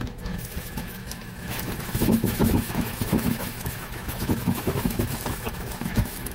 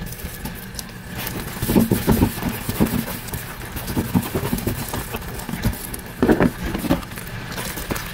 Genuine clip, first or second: second